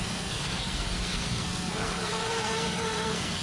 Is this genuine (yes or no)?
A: no